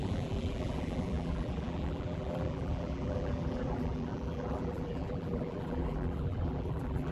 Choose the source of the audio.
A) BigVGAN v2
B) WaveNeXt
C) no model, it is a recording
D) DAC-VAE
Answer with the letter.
A